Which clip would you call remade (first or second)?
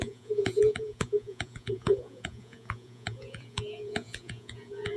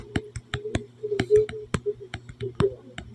first